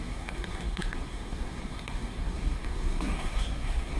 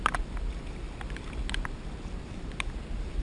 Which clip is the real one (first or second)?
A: second